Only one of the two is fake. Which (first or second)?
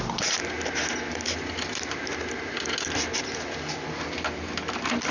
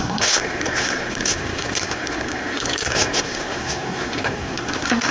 second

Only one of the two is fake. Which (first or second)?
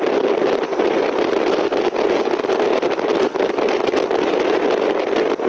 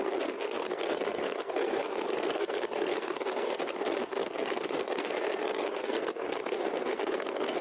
second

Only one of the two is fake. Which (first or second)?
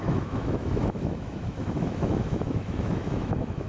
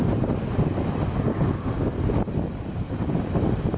first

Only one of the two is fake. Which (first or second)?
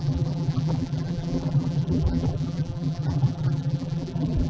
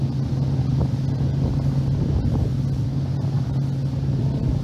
first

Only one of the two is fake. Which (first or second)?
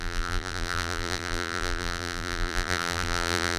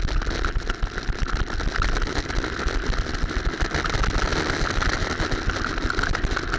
first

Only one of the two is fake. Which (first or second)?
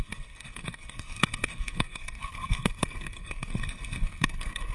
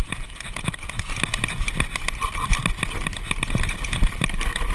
first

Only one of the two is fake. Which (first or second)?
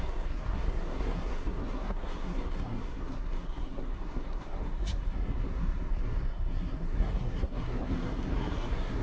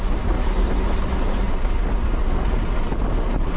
first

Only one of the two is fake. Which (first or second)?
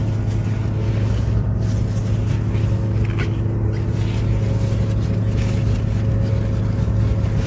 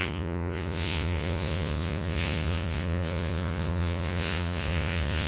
second